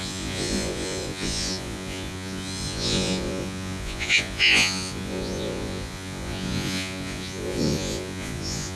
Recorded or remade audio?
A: remade